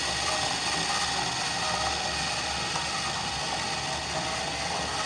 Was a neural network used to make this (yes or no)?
no